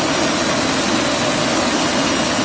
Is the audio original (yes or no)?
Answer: yes